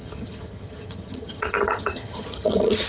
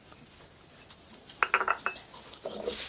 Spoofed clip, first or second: first